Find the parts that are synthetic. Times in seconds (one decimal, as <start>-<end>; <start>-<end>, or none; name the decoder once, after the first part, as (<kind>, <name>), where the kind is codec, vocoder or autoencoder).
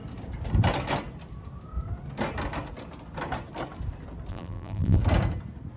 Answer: 4.3-5.0 (vocoder, BigVGAN v2)